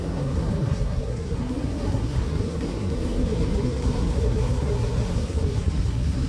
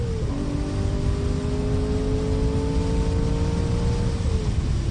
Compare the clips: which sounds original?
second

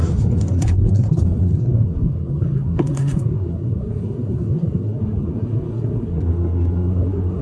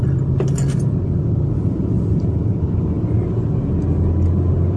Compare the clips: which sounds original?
second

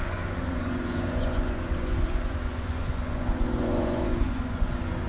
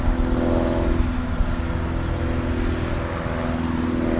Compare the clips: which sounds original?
second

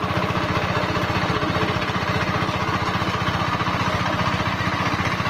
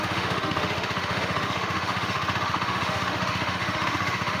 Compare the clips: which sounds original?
first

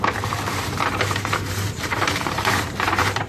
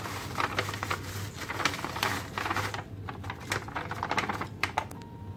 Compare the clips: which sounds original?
second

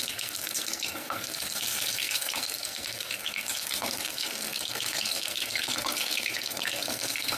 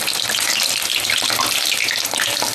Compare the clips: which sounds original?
second